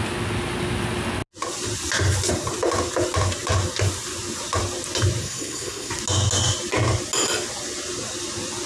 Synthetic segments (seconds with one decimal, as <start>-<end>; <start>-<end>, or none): 5.2-5.9